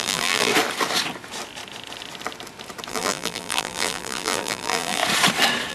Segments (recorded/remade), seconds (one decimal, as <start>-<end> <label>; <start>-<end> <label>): 0.0-0.5 remade; 0.5-2.9 recorded; 2.9-5.0 remade; 5.0-5.7 recorded